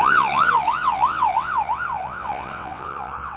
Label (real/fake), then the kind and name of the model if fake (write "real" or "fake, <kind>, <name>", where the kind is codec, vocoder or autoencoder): fake, vocoder, WaveNeXt